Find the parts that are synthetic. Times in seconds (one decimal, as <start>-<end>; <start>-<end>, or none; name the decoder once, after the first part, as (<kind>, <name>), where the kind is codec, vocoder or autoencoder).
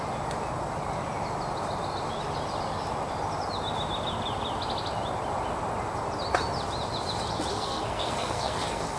7.5-9.0 (codec, SNAC)